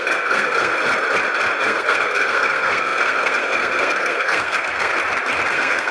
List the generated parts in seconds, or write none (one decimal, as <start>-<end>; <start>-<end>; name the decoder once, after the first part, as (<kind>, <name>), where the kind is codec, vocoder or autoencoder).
0.0-0.7 (codec, SNAC); 1.6-4.9; 5.5-5.9